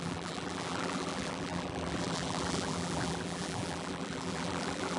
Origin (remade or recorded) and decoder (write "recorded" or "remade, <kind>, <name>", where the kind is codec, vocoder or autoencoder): remade, vocoder, BigVGAN v2